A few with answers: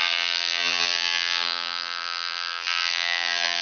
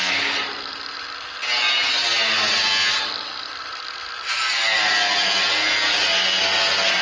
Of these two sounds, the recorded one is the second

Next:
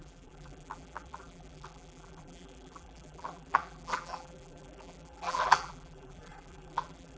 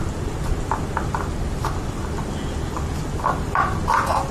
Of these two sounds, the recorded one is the second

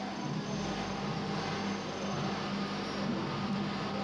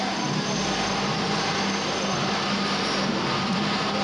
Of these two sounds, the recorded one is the first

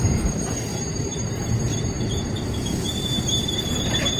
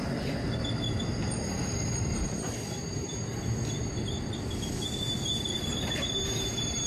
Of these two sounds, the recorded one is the second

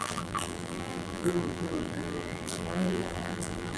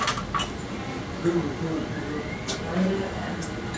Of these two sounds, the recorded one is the second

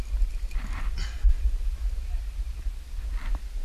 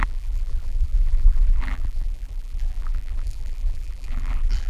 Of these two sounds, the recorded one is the first